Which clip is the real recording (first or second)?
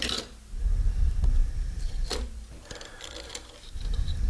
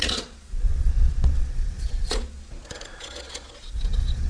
first